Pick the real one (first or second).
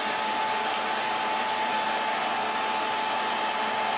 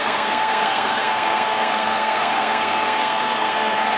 first